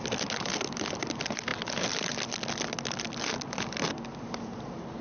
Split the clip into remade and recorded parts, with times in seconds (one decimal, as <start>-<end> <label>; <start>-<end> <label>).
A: 0.0-5.0 recorded